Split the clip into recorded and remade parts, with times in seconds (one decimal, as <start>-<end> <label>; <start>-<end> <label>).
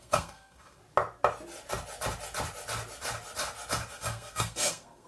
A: 0.0-0.8 remade; 0.8-3.9 recorded; 3.9-5.1 remade